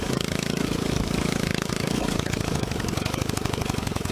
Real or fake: fake